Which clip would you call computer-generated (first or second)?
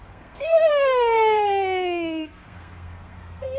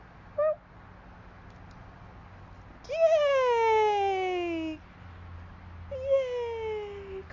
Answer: first